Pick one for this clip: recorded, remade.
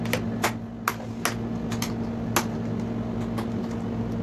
recorded